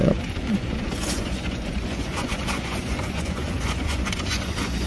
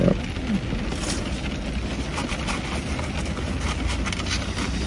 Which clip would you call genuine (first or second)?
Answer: second